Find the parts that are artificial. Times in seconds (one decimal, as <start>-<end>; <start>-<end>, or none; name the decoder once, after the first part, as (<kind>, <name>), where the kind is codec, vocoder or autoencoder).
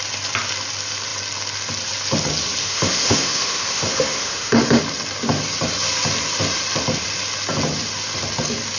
2.6-4.8 (autoencoder, DAC-VAE)